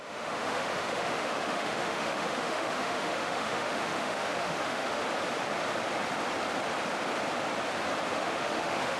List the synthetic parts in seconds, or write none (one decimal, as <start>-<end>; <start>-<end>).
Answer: 0.0-5.0; 8.1-9.0